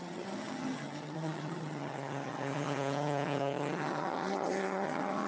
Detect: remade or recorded remade